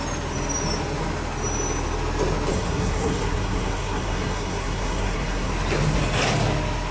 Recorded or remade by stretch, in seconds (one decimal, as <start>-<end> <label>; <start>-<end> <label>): 0.0-2.5 recorded; 2.5-5.5 remade; 5.5-6.9 recorded